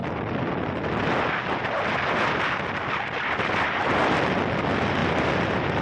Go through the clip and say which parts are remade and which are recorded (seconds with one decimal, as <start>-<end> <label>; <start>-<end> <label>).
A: 0.0-5.8 recorded